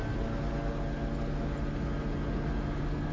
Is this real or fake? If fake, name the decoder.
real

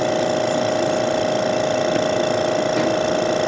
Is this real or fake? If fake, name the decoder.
real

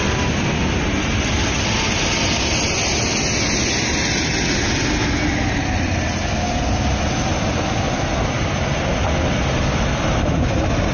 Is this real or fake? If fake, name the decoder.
real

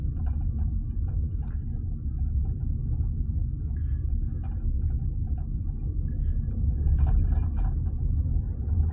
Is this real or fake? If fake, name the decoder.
real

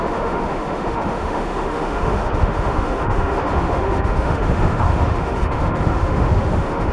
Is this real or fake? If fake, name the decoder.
fake, autoencoder, DAC-VAE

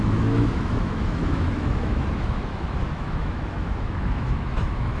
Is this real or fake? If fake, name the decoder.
fake, autoencoder, DAC-VAE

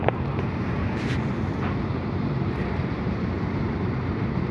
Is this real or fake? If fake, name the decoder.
fake, vocoder, BigVGAN v2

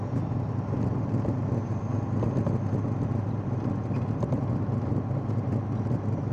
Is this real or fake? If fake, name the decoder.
real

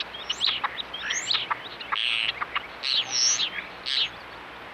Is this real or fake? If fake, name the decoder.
real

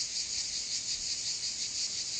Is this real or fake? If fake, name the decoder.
real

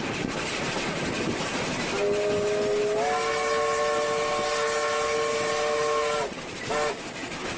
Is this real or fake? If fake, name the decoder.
real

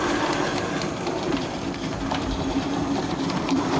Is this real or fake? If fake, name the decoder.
fake, vocoder, BigVGAN v2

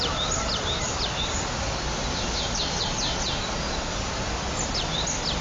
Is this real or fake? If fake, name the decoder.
real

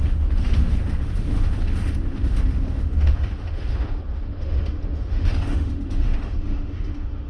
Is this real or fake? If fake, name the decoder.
fake, autoencoder, DAC-VAE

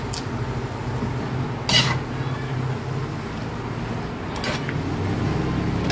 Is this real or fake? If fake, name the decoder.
real